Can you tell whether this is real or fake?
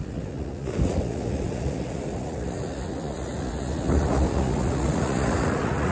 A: fake